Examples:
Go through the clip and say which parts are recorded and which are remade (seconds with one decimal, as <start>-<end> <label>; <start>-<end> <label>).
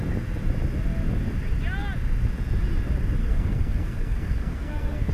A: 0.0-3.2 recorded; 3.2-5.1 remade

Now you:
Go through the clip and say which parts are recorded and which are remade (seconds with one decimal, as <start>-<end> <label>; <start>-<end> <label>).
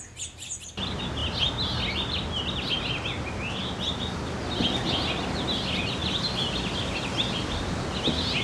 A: 0.0-8.4 recorded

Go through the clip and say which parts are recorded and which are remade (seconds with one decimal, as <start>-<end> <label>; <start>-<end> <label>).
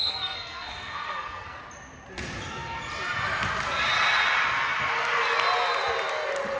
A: 0.0-1.6 remade; 1.6-6.6 recorded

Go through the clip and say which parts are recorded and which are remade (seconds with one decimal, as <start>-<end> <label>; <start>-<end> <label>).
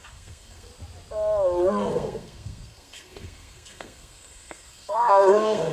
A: 0.0-0.7 remade; 0.7-1.9 recorded; 1.9-5.7 remade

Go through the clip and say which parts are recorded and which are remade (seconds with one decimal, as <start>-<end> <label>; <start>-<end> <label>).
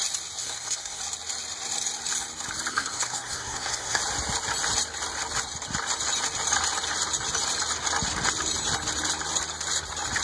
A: 0.0-0.4 recorded; 0.4-1.0 remade; 1.0-2.7 recorded; 2.7-4.0 remade; 4.0-10.2 recorded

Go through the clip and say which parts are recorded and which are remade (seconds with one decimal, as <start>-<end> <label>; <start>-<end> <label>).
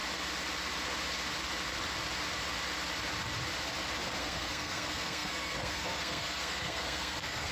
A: 0.0-4.2 recorded; 4.2-7.5 remade